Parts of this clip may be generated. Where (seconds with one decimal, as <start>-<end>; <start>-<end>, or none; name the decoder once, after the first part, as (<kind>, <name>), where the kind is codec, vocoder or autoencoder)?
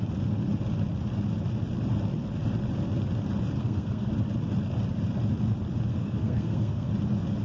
3.6-4.1 (codec, SNAC); 5.9-6.9